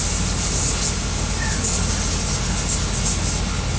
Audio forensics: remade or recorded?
recorded